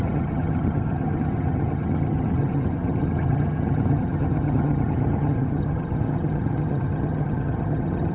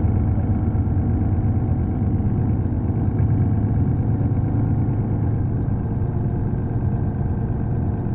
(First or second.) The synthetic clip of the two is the first